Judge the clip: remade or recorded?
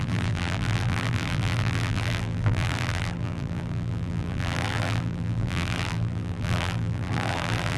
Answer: remade